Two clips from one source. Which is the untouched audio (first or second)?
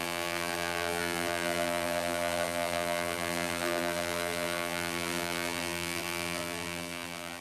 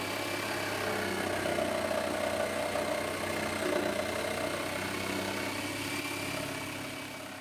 second